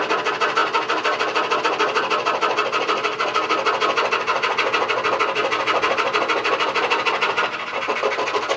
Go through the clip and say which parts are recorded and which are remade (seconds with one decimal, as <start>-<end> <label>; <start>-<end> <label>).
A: 0.0-8.6 recorded

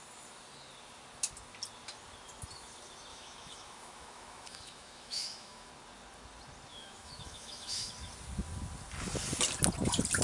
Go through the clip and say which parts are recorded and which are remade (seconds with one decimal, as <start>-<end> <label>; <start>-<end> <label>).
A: 0.0-3.1 recorded; 3.1-5.7 remade; 5.7-6.7 recorded; 6.7-7.9 remade; 7.9-10.2 recorded

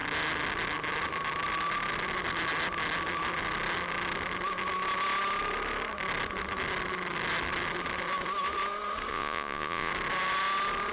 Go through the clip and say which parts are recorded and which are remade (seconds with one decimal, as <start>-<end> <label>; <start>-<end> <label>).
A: 0.0-9.1 recorded; 9.1-9.9 remade; 9.9-10.9 recorded

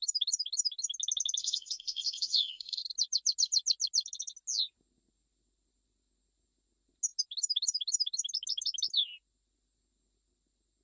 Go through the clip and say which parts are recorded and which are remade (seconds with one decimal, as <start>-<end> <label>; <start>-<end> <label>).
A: 0.0-1.4 recorded; 1.4-2.8 remade; 2.8-10.8 recorded

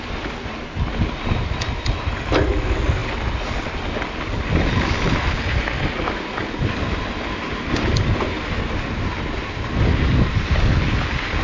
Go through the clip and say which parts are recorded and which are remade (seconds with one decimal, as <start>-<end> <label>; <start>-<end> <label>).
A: 0.0-11.4 recorded